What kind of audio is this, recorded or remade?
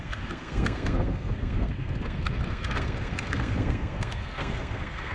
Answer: remade